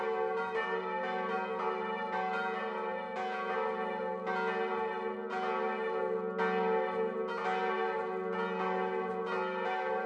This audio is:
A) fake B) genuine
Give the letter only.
B